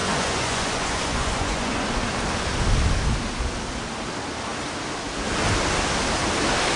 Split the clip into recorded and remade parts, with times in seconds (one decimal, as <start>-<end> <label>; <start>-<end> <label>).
0.0-1.9 remade; 1.9-6.8 recorded